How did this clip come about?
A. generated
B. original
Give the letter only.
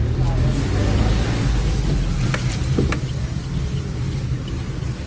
B